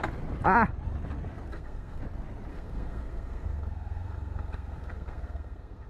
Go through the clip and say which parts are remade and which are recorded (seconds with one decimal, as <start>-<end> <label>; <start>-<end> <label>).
0.0-1.5 recorded; 1.5-2.0 remade; 2.0-2.5 recorded; 2.5-5.9 remade

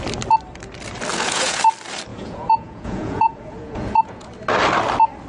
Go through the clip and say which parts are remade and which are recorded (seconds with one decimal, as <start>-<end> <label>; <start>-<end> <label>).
0.0-1.1 recorded; 1.1-1.6 remade; 1.6-2.1 recorded; 2.1-4.3 remade; 4.3-5.3 recorded